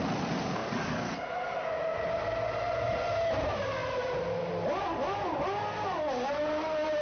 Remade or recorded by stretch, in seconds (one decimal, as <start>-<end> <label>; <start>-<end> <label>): 0.0-7.0 recorded